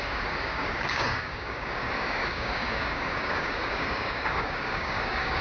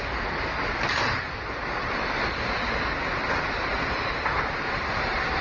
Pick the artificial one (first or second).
first